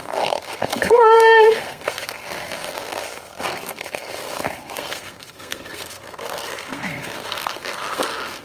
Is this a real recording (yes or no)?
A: no